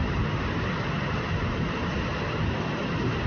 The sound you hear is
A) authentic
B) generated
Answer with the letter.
B